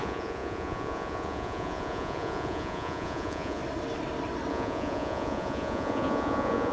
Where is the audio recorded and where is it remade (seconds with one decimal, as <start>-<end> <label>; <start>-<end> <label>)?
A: 0.0-3.6 remade; 3.6-4.5 recorded; 4.5-6.7 remade